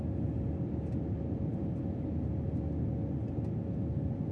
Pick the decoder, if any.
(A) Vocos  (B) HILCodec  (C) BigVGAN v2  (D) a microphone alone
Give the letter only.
D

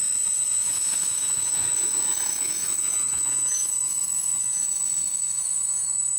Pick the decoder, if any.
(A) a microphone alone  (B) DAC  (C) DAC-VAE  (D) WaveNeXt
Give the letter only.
C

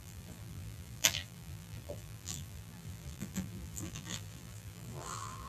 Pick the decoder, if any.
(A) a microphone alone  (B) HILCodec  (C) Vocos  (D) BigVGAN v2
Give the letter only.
D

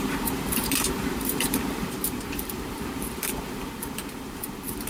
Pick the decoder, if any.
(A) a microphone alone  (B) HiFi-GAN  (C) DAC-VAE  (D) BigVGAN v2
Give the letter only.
D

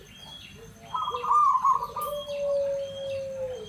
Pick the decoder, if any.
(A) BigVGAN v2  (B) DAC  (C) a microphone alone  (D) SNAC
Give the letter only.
C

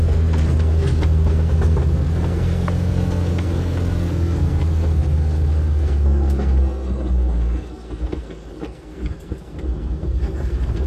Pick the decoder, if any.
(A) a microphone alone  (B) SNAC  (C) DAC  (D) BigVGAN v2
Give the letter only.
B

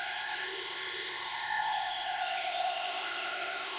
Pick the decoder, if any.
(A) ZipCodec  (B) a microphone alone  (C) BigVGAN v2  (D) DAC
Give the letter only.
A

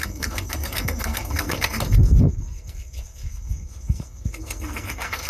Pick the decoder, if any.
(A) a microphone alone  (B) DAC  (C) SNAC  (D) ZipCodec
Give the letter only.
C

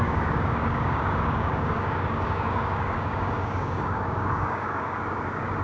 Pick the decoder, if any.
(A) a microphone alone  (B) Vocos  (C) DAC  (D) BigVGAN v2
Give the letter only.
C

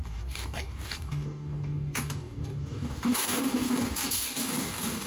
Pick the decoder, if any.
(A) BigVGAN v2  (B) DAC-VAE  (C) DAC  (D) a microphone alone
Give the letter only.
C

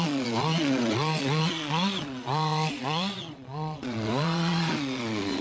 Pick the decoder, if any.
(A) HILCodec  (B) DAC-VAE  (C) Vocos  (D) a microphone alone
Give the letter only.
C